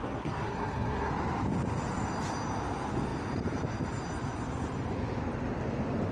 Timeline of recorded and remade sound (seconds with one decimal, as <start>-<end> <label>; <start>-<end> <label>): 0.0-1.1 remade; 1.1-6.1 recorded